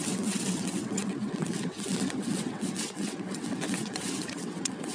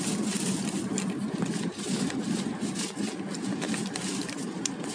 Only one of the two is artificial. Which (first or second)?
first